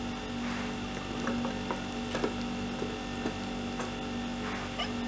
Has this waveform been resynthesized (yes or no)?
no